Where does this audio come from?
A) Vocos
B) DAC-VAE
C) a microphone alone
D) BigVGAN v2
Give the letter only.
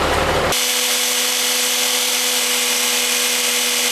C